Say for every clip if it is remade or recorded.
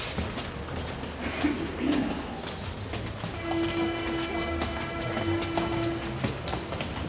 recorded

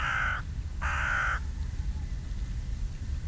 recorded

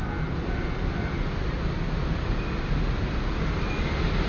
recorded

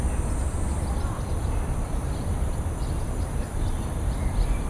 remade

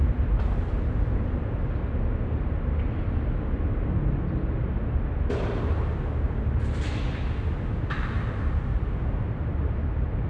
recorded